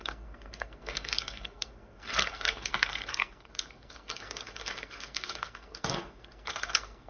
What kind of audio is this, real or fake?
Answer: fake